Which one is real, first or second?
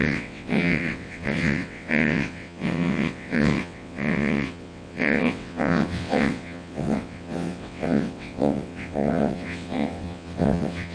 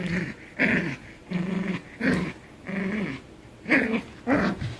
second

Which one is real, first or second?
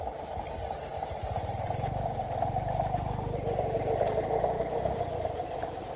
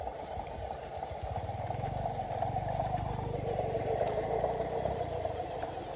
first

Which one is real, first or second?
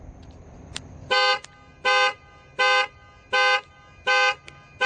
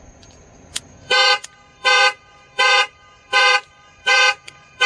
first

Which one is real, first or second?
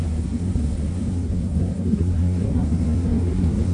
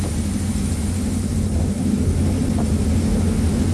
second